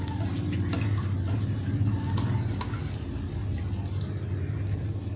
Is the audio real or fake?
real